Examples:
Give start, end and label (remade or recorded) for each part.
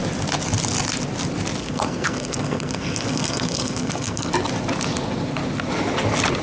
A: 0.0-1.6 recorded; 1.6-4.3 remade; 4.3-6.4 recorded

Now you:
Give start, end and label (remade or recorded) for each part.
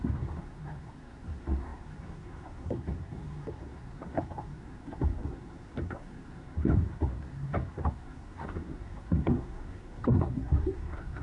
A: 0.0-11.2 remade